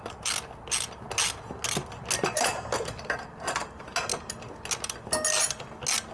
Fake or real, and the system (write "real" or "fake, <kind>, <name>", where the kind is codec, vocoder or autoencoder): real